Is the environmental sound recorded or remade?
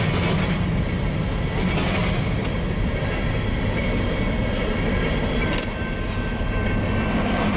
recorded